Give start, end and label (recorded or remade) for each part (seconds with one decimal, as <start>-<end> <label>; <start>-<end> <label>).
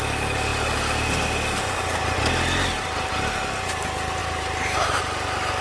0.0-4.2 recorded; 4.2-5.0 remade; 5.0-5.6 recorded